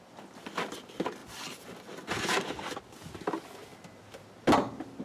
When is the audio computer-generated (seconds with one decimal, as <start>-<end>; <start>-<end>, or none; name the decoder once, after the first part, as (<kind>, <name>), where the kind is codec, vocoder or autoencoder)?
none